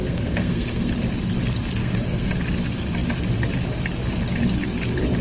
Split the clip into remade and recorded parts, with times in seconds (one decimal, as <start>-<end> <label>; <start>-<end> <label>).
0.0-0.9 remade; 0.9-1.8 recorded; 1.8-2.3 remade; 2.3-5.2 recorded